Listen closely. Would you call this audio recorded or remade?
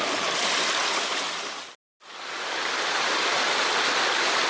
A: recorded